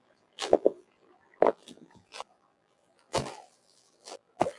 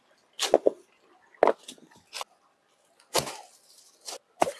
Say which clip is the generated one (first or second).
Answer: first